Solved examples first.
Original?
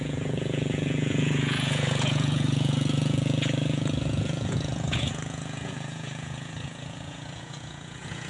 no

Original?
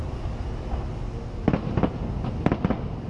yes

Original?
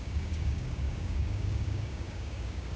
no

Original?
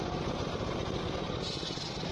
yes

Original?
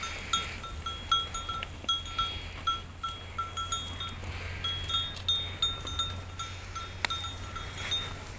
yes